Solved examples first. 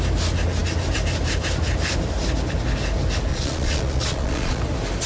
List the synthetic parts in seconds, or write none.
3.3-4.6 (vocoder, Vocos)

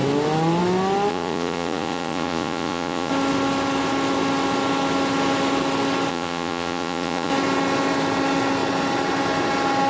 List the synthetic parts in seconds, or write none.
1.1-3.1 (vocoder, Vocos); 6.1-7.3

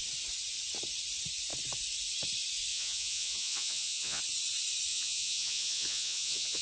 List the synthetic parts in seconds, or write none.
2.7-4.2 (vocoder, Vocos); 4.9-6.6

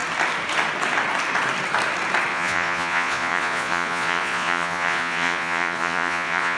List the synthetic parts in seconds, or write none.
2.3-6.6 (vocoder, Vocos)